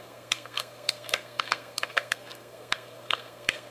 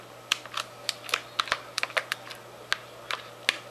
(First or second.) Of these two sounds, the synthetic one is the first